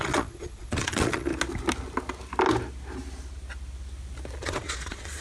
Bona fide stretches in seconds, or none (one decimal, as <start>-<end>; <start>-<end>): 1.3-4.4